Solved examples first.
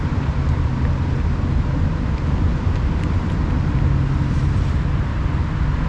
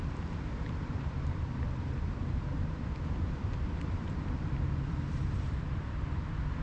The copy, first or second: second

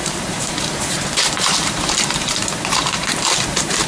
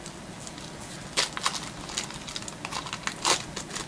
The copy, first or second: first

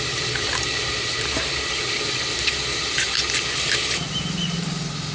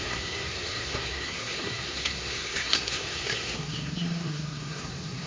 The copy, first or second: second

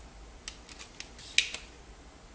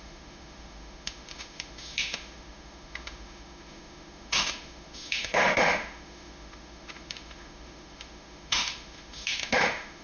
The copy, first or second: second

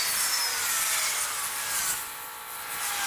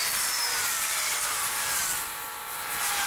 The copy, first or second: second